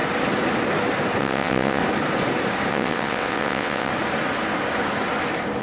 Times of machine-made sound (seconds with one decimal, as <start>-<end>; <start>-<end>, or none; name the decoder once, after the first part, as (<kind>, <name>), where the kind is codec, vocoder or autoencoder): 1.2-1.8 (vocoder, WaveNeXt); 2.7-3.9